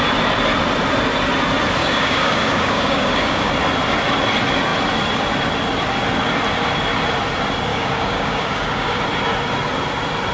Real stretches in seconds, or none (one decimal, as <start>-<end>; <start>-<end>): 0.0-1.8; 3.5-7.7; 9.0-10.3